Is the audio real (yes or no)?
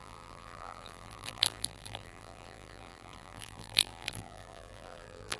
no